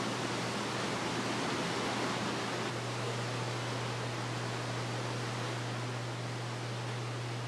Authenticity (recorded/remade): recorded